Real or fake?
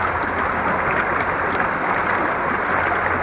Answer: real